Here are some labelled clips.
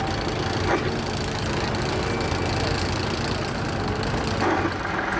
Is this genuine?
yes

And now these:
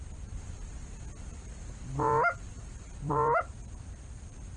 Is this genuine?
no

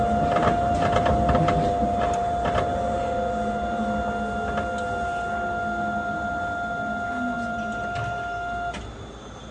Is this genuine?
yes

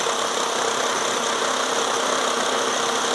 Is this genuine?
yes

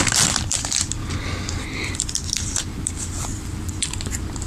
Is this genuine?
no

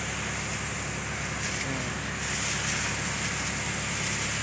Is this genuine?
yes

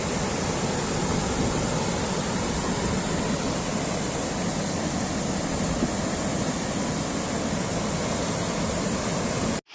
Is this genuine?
yes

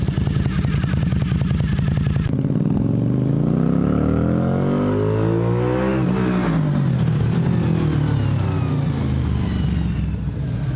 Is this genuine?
yes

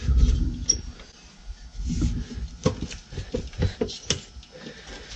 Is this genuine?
yes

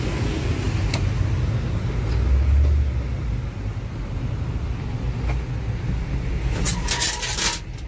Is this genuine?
yes